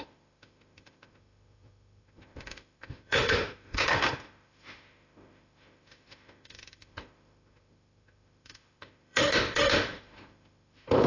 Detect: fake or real fake